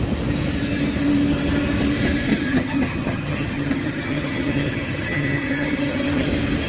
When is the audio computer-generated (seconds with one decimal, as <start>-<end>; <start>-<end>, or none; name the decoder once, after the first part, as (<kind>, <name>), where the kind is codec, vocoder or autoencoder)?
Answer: 2.3-6.3 (vocoder, HiFi-GAN)